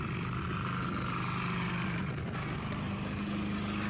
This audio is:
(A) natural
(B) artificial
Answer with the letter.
A